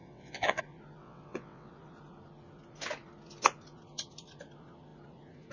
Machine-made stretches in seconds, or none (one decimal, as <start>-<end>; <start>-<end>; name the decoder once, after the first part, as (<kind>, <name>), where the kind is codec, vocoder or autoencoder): 0.0-0.6 (vocoder, WaveNeXt); 1.0-1.7